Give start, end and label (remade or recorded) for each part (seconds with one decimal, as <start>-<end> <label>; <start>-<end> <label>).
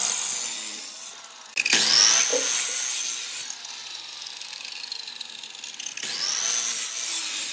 0.0-4.1 recorded; 4.1-4.7 remade; 4.7-7.5 recorded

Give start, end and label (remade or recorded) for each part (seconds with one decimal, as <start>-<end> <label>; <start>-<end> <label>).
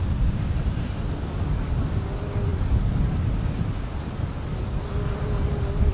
0.0-5.9 recorded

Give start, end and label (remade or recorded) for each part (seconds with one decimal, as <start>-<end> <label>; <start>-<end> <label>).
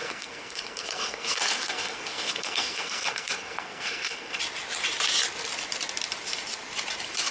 0.0-4.4 remade; 4.4-7.3 recorded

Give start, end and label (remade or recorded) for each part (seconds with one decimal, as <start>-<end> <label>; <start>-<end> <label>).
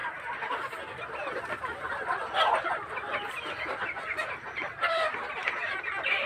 0.0-6.3 recorded